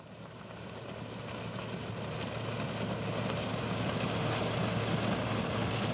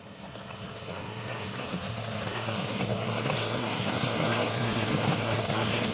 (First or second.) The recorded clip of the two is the first